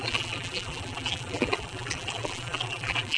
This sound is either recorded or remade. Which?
remade